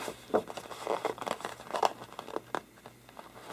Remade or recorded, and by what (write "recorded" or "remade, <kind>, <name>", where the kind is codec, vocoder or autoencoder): recorded